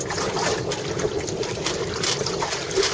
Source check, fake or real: real